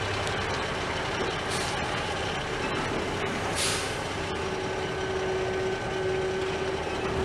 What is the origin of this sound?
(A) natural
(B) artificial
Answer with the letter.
A